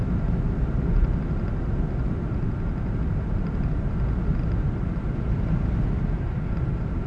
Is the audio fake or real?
real